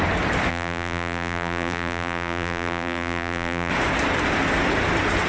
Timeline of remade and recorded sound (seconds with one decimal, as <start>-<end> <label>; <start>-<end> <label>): 0.0-0.5 recorded; 0.5-3.7 remade; 3.7-5.3 recorded